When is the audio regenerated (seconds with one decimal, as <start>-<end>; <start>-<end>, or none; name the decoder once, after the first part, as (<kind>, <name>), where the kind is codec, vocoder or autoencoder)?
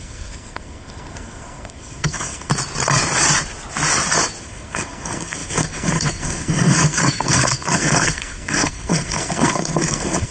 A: 0.0-2.5 (codec, SNAC); 4.4-10.3